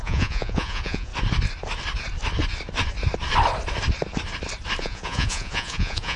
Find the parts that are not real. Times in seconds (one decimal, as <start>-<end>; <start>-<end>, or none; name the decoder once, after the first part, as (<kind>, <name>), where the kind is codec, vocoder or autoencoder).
0.0-1.1 (vocoder, Vocos); 4.8-6.2